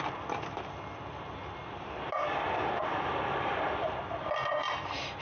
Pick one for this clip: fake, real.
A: real